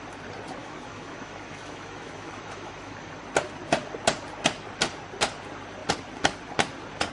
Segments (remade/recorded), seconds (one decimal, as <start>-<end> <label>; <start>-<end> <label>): 0.0-0.6 recorded; 0.6-3.1 remade; 3.1-7.1 recorded